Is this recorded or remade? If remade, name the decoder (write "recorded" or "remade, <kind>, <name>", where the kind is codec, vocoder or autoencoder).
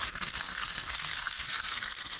remade, codec, SNAC